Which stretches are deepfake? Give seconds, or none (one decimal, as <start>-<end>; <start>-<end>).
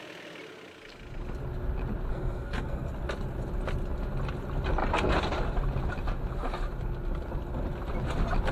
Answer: 2.1-2.9